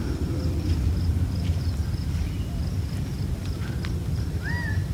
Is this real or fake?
real